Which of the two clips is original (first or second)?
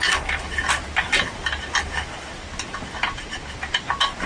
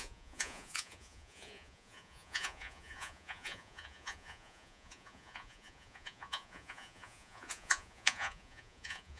first